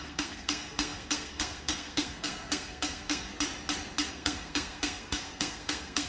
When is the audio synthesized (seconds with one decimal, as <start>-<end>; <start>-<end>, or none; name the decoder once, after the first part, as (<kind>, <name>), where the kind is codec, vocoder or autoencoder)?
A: 0.0-3.3 (codec, SNAC); 4.1-6.1